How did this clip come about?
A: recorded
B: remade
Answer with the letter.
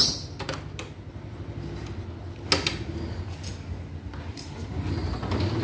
A